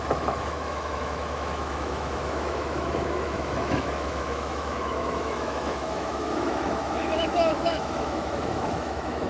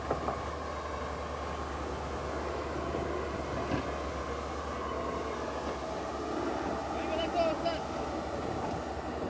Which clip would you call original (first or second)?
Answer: second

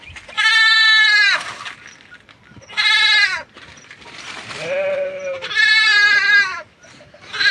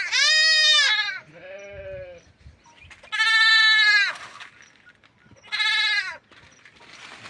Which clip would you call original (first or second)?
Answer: second